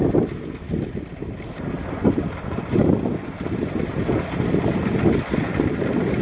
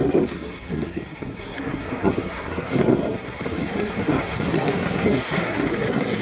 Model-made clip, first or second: second